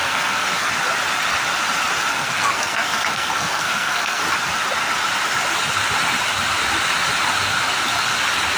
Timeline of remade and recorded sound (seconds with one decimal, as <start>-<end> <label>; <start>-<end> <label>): 0.0-0.7 remade; 0.7-2.1 recorded; 2.1-4.2 remade; 4.2-8.6 recorded